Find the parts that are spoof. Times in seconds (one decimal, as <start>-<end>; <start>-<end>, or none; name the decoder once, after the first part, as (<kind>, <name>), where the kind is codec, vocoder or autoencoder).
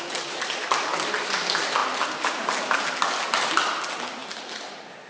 4.2-5.1 (vocoder, BigVGAN v2)